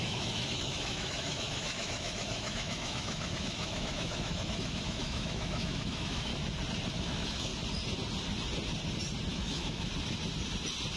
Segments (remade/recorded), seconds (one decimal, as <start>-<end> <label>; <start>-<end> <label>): 0.0-6.3 remade; 6.3-6.9 recorded; 6.9-7.5 remade; 7.5-9.3 recorded; 9.3-9.9 remade; 9.9-11.0 recorded

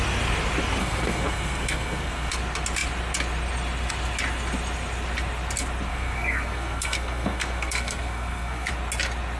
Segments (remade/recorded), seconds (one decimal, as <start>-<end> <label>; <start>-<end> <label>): 0.0-0.8 recorded; 0.8-2.3 remade; 2.3-5.9 recorded; 5.9-8.7 remade; 8.7-9.4 recorded

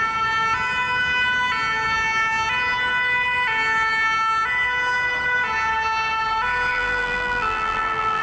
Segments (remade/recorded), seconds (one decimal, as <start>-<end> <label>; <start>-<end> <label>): 0.0-6.7 recorded; 6.7-8.2 remade

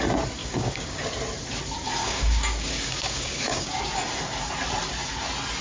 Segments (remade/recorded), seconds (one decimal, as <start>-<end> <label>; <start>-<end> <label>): 0.0-0.4 recorded; 0.4-1.0 remade; 1.0-2.0 recorded; 2.0-3.8 remade; 3.8-5.6 recorded

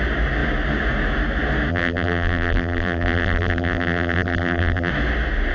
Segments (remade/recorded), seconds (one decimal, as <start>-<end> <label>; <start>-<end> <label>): 0.0-1.7 recorded; 1.7-4.9 remade; 4.9-5.5 recorded